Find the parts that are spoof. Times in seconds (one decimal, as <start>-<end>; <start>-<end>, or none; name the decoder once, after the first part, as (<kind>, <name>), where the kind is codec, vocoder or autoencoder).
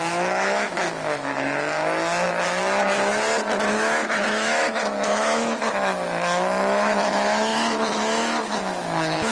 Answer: 0.0-1.3 (autoencoder, DAC-VAE); 3.7-9.3